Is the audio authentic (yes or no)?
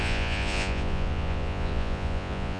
no